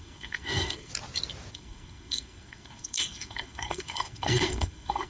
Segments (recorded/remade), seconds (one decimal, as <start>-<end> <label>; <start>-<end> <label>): 0.0-0.9 remade; 0.9-1.5 recorded; 1.5-5.1 remade